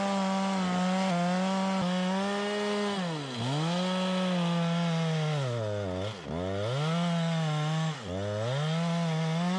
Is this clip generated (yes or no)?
no